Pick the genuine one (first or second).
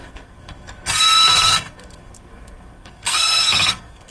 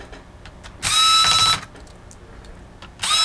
second